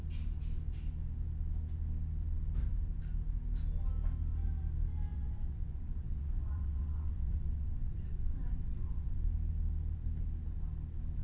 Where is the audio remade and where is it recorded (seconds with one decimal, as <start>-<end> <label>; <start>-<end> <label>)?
0.0-5.1 recorded; 5.1-9.2 remade; 9.2-11.2 recorded